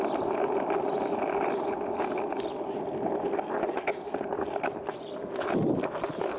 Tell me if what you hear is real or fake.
real